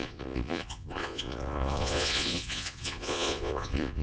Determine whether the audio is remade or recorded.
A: remade